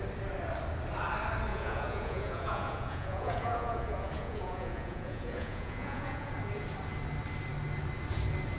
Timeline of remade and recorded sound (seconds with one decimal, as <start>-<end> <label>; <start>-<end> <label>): 0.0-1.5 recorded; 1.5-6.3 remade; 6.3-8.6 recorded